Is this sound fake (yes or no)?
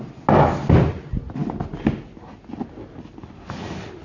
no